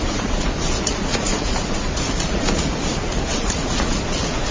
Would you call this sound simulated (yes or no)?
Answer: yes